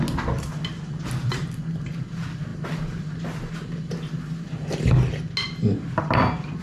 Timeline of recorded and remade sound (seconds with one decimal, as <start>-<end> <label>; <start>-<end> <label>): 0.0-1.2 recorded; 1.2-1.9 remade; 1.9-6.6 recorded